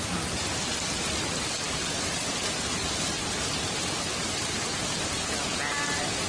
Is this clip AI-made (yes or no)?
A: no